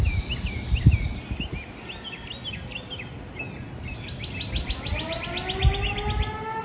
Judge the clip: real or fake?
real